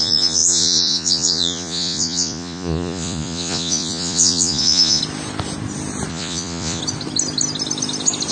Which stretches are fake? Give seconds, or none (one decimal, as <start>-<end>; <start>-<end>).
0.0-5.0; 6.1-6.8